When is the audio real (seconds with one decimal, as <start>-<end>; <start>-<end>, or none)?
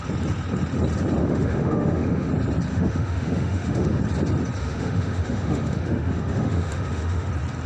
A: 0.0-1.2; 2.3-2.7; 4.0-4.6; 7.3-7.7